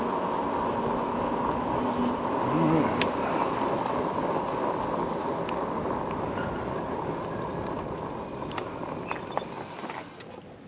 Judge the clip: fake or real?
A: real